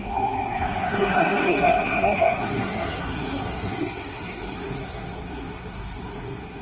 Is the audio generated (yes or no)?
yes